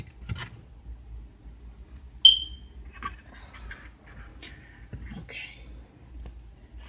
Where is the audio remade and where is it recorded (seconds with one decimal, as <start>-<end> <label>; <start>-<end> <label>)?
0.0-6.9 recorded